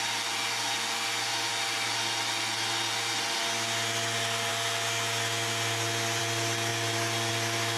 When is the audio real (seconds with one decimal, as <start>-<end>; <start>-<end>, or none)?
0.0-7.8